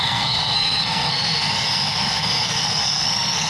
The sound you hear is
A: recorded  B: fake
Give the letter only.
B